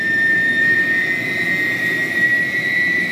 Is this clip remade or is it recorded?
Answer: remade